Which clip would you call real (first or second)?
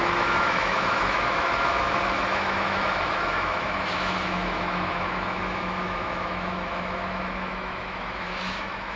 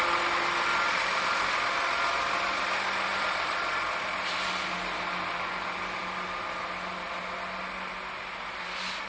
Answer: second